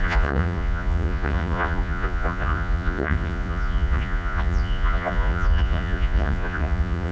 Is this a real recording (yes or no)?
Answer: no